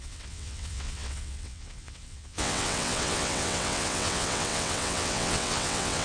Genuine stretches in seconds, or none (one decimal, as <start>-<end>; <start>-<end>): none